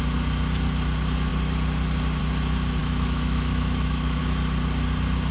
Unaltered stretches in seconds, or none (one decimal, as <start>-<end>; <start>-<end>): 0.0-2.8; 4.2-5.3